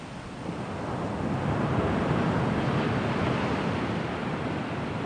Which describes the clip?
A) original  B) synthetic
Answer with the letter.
A